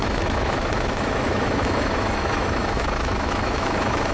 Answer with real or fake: fake